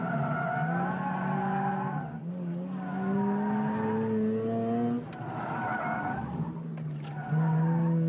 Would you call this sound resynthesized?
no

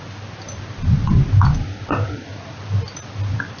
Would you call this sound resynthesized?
no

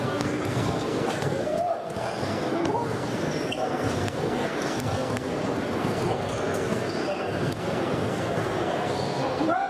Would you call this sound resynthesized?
yes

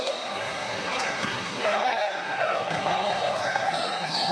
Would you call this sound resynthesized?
yes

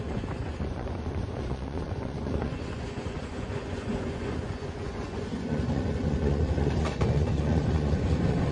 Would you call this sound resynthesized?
yes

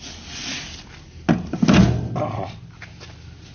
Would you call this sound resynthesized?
no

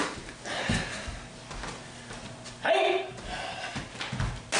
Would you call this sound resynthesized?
no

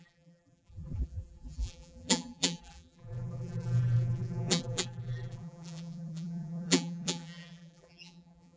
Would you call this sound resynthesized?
yes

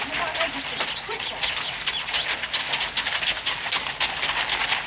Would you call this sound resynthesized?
no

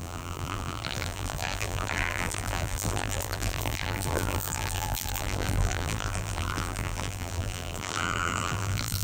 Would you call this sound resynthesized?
yes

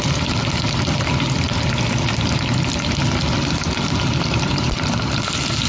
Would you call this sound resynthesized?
no